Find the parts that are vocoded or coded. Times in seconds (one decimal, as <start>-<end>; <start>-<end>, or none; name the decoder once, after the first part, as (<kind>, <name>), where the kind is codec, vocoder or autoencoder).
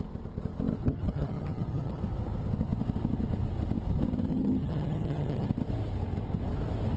0.8-2.0 (vocoder, HiFi-GAN); 4.3-5.5